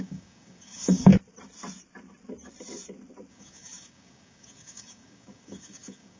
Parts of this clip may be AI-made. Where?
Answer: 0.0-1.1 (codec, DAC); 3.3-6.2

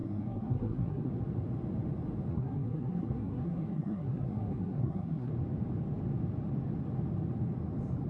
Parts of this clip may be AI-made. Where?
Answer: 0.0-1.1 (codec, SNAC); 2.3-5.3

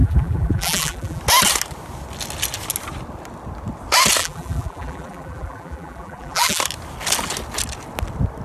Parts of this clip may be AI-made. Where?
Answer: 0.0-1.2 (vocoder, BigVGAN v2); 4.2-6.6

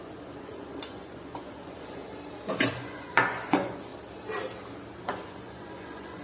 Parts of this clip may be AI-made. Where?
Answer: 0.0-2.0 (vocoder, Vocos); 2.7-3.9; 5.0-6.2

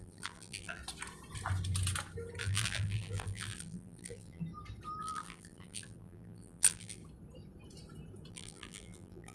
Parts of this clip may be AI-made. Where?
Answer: 0.0-0.8 (vocoder, BigVGAN v2); 2.4-4.4; 5.0-7.0; 8.3-9.3

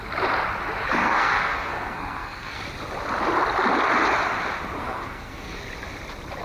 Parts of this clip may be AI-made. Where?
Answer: 1.0-2.6 (codec, SNAC); 4.8-5.6

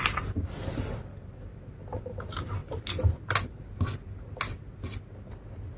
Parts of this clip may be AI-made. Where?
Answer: none